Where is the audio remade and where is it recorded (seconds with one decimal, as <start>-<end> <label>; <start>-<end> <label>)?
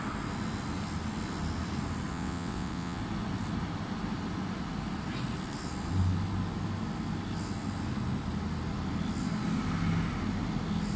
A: 0.0-2.1 recorded; 2.1-3.0 remade; 3.0-11.0 recorded